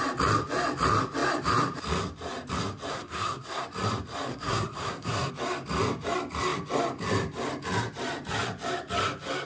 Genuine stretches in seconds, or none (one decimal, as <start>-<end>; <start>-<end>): 0.0-2.9; 3.6-4.3; 5.3-9.5